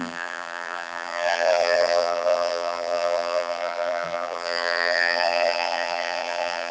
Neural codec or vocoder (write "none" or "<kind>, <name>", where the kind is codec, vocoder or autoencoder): vocoder, BigVGAN v2